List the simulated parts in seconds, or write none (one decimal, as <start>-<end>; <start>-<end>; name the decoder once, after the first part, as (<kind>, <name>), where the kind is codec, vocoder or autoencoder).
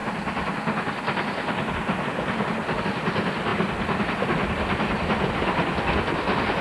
none